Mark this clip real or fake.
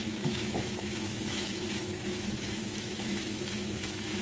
fake